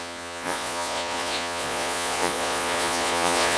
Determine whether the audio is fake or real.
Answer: fake